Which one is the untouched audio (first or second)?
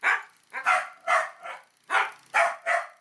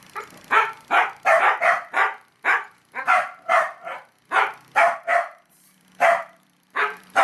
first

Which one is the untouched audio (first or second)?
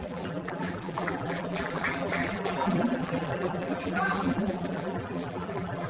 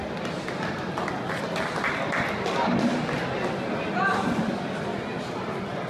second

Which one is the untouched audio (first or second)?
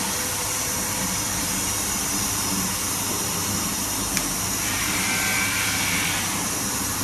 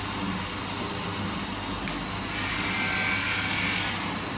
second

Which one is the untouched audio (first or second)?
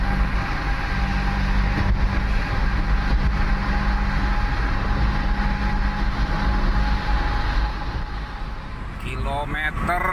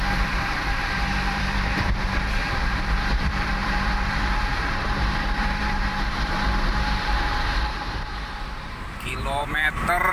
first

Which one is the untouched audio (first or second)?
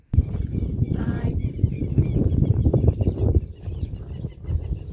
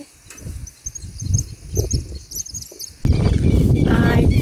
second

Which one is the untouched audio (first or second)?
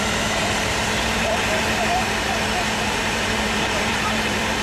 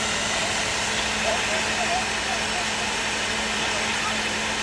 second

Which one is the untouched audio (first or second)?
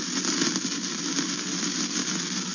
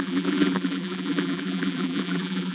first